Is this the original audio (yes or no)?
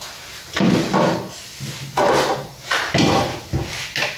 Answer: yes